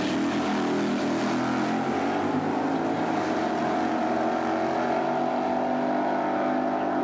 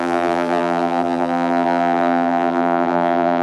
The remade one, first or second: second